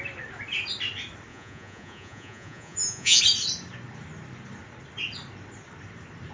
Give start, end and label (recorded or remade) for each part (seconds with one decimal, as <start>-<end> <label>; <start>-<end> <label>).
0.0-1.3 recorded; 1.3-3.2 remade; 3.2-6.3 recorded